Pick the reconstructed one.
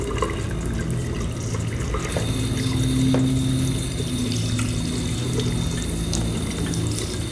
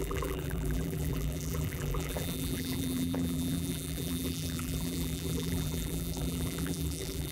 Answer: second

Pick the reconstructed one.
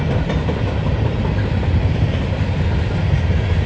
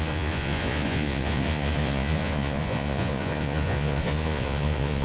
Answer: second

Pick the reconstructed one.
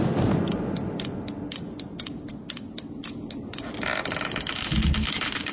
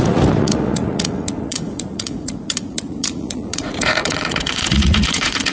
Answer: second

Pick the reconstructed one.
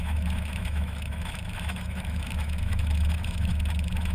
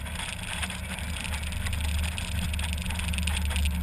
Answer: first